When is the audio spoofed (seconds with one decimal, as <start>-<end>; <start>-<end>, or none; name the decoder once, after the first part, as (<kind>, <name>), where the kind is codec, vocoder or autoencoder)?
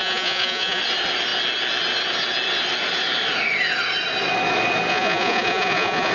0.0-0.8 (vocoder, Vocos); 4.9-6.1